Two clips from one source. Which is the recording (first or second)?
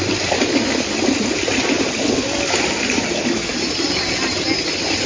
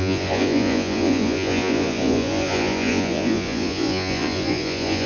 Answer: first